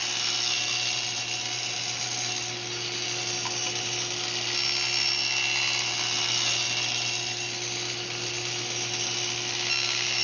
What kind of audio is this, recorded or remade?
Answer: recorded